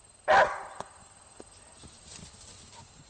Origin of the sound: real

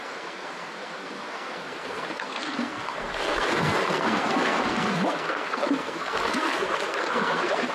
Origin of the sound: fake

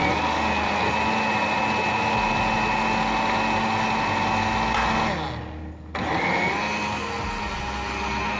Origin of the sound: real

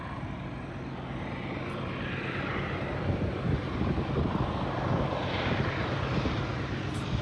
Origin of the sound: real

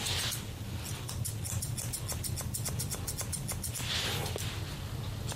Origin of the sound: real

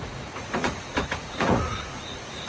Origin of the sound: fake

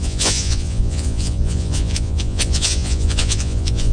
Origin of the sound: fake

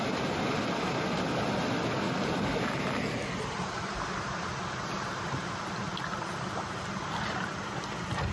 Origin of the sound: real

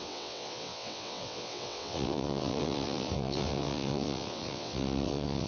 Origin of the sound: fake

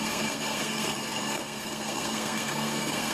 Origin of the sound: fake